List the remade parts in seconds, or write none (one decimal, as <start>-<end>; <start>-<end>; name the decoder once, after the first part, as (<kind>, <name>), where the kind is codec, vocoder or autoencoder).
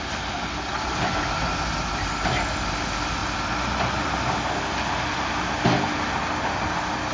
none